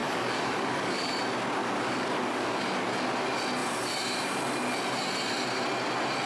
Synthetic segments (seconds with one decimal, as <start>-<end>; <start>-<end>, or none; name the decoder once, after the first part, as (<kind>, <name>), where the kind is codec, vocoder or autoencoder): 0.0-1.1 (codec, DAC); 1.6-2.6